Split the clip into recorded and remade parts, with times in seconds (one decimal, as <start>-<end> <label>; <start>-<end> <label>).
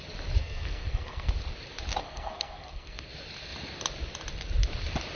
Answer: 0.0-0.4 recorded; 0.4-1.3 remade; 1.3-2.0 recorded; 2.0-3.1 remade; 3.1-5.2 recorded